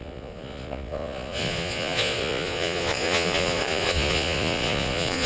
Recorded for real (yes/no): no